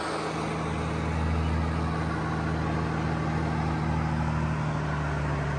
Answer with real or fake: real